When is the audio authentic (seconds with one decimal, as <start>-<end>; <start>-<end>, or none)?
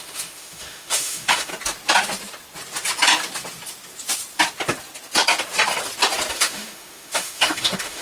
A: 1.5-6.3